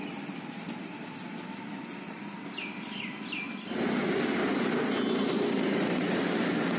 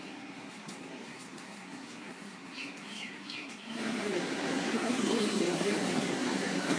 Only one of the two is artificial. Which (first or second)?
second